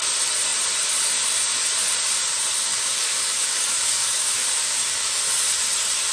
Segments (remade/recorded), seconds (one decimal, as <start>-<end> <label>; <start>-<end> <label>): 0.0-2.7 recorded; 2.7-5.2 remade; 5.2-6.1 recorded